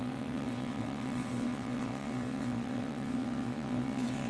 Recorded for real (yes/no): no